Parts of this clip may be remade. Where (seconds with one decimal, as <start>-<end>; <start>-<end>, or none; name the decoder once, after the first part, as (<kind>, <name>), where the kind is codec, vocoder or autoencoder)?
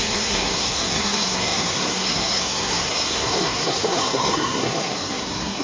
0.0-5.6 (codec, SNAC)